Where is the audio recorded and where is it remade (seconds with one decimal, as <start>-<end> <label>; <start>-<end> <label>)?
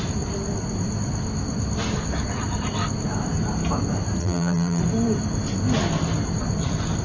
0.0-4.2 recorded; 4.2-4.8 remade; 4.8-7.0 recorded